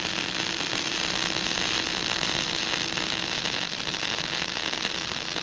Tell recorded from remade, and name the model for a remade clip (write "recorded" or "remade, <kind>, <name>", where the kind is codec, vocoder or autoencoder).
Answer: recorded